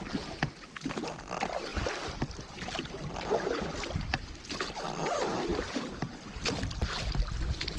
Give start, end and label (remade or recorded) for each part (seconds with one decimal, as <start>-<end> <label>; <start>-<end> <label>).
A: 0.0-7.8 recorded